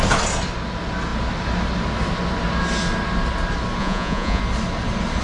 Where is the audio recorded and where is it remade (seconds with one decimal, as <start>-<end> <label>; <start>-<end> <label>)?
0.0-3.8 recorded; 3.8-4.4 remade; 4.4-5.2 recorded